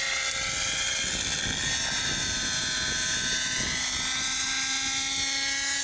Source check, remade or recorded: recorded